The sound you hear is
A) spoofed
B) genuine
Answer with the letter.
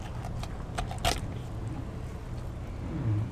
B